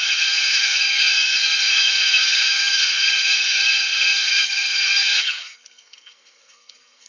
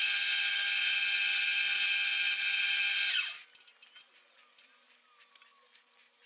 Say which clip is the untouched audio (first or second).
second